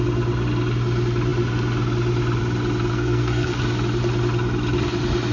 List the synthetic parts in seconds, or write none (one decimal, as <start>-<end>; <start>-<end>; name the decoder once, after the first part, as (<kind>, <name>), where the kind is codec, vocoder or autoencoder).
2.9-3.6 (codec, SNAC)